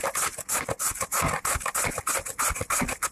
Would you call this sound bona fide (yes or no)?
yes